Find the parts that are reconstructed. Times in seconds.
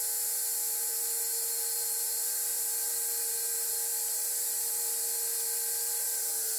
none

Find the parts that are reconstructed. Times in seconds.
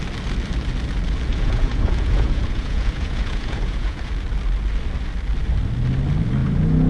1.3-4.1 (vocoder, Vocos); 6.4-6.9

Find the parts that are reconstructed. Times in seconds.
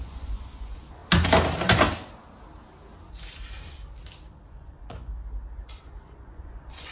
0.0-1.0 (vocoder, Vocos); 4.5-5.1; 5.7-6.9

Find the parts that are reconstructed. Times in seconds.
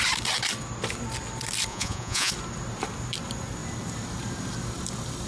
1.7-2.3 (vocoder, Vocos)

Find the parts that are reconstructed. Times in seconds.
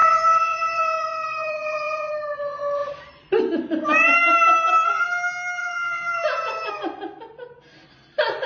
0.0-2.1 (vocoder, Vocos); 5.6-6.7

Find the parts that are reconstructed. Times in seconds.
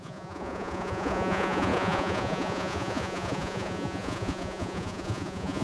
0.0-5.6 (vocoder, Vocos)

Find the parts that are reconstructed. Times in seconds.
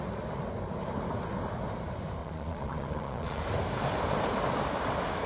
2.2-3.4 (vocoder, Vocos)